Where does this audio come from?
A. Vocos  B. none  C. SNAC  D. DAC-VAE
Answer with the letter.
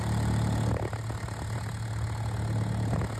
B